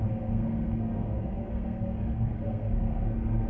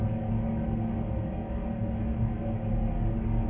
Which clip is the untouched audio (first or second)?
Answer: second